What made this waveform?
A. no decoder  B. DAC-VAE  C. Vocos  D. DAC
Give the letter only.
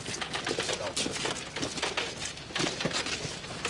A